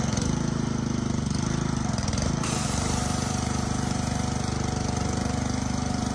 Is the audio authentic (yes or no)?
no